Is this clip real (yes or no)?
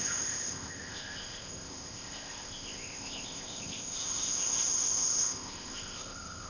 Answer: no